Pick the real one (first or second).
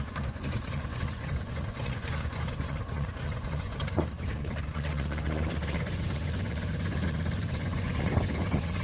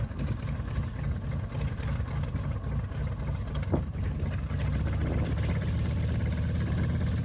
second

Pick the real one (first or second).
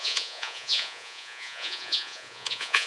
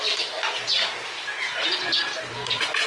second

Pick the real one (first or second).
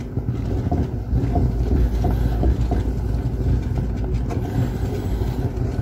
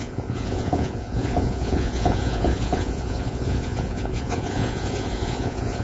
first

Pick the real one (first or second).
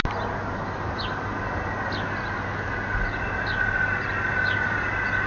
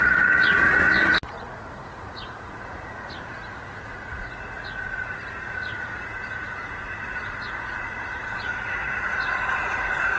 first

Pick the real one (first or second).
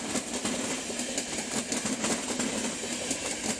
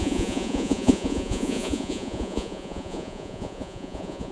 first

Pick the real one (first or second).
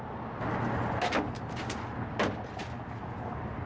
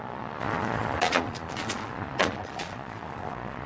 first